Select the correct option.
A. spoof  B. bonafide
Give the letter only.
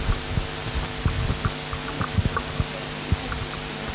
B